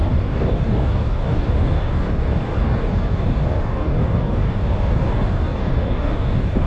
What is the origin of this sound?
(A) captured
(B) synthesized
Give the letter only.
B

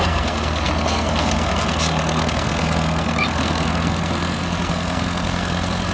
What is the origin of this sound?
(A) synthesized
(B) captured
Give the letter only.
A